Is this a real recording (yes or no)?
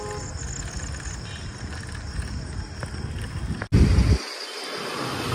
yes